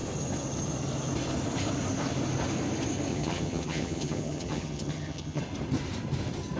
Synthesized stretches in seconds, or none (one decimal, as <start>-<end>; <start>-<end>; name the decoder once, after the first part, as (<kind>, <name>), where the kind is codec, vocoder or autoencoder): 3.1-5.4 (vocoder, HiFi-GAN)